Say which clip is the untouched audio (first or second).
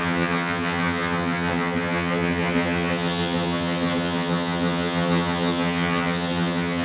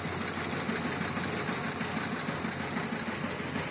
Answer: second